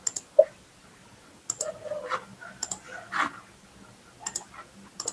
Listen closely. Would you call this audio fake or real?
real